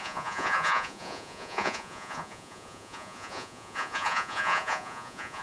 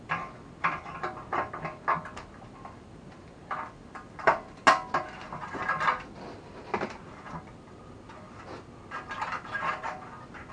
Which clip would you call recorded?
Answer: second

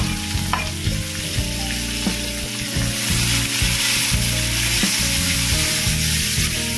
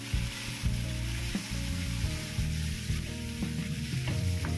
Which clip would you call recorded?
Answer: first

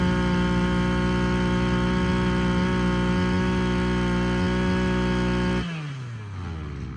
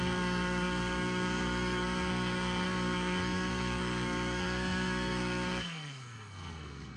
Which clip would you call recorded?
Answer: first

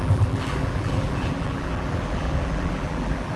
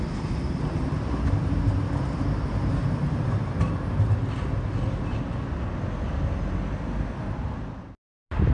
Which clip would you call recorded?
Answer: second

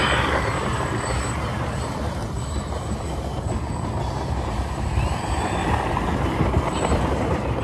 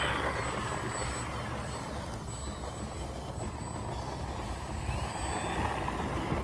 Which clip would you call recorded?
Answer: second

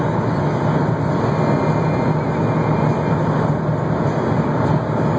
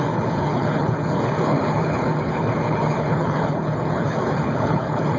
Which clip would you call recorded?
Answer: first